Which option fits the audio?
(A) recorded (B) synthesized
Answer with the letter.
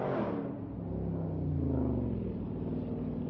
A